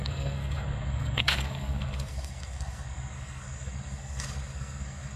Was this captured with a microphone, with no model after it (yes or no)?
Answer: no